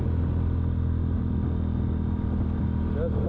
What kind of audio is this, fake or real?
real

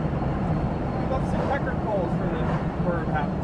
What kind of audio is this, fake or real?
fake